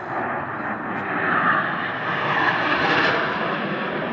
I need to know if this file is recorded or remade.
recorded